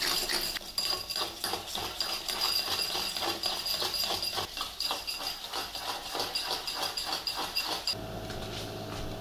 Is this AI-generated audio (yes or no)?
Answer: no